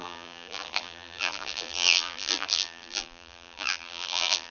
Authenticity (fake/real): fake